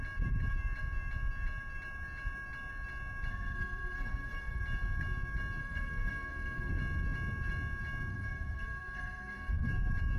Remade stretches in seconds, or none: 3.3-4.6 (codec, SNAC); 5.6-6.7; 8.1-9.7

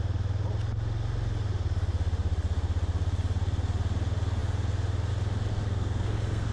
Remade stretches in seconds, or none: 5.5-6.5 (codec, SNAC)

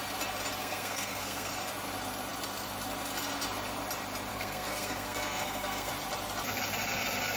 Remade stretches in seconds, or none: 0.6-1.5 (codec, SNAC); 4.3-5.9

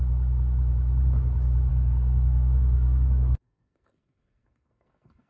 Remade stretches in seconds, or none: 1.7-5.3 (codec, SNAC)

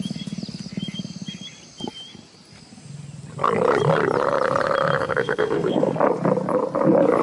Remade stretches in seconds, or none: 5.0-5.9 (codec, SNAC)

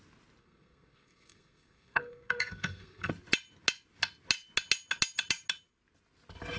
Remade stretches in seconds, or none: 0.4-3.1 (codec, SNAC)

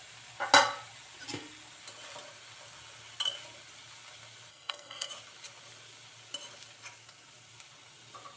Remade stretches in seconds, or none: 4.5-5.1 (codec, SNAC)